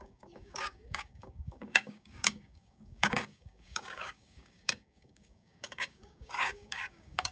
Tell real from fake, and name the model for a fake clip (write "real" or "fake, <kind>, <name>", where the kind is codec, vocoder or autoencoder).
fake, codec, DAC